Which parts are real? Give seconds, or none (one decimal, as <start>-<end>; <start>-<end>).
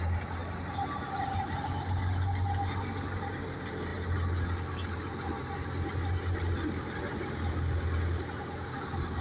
0.0-9.2